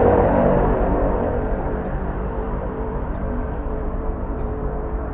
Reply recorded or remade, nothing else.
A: remade